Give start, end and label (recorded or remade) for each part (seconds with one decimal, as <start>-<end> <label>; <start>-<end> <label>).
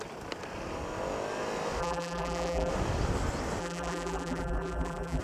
0.0-1.8 recorded; 1.8-2.7 remade; 2.7-3.6 recorded; 3.6-5.2 remade